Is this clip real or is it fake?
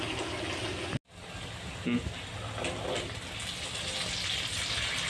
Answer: real